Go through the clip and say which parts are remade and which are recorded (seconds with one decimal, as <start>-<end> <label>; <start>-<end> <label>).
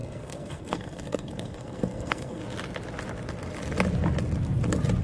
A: 0.0-2.4 remade; 2.4-5.0 recorded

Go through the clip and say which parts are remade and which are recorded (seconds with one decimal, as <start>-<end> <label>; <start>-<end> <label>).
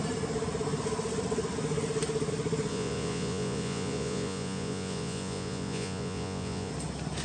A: 0.0-2.7 recorded; 2.7-6.7 remade; 6.7-7.2 recorded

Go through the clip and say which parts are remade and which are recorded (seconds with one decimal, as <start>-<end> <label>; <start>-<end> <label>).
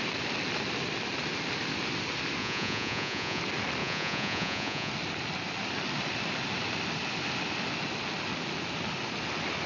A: 0.0-2.4 recorded; 2.4-3.4 remade; 3.4-3.8 recorded; 3.8-4.9 remade; 4.9-9.7 recorded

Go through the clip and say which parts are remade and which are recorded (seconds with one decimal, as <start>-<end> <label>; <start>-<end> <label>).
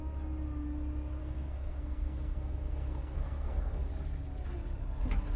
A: 0.0-1.2 recorded; 1.2-3.9 remade; 3.9-5.4 recorded